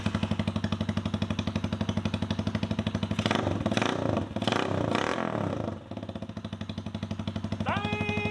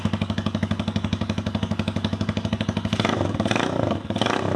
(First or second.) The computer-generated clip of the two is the second